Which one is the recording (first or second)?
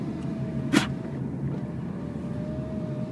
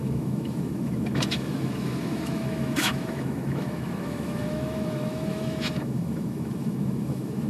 first